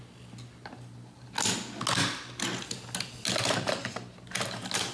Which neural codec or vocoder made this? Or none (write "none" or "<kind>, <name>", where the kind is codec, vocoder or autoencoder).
none